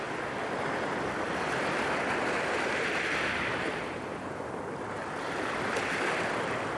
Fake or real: real